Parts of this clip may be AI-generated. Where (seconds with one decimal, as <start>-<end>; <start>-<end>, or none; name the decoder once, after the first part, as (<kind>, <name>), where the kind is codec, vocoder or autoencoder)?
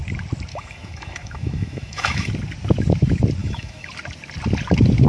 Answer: 0.5-2.3 (autoencoder, DAC-VAE); 3.4-3.9